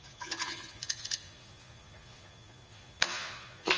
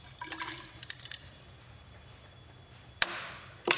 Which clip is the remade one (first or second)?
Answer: first